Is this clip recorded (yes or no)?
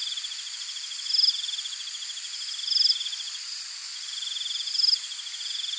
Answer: yes